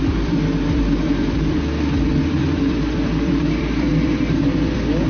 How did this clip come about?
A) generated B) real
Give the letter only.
A